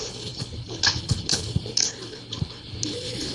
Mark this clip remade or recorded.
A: remade